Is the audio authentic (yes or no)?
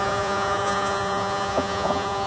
no